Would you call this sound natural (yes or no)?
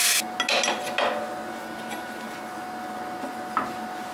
yes